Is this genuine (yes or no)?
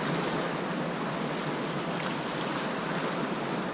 yes